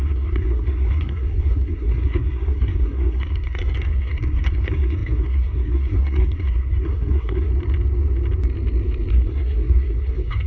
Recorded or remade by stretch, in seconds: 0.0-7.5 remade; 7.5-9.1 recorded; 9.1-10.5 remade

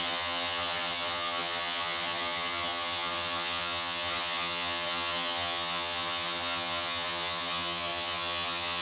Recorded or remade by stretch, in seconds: 0.0-8.8 remade